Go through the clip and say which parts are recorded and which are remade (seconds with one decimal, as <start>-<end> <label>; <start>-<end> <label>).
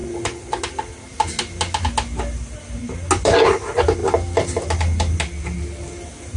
0.0-0.6 remade; 0.6-6.4 recorded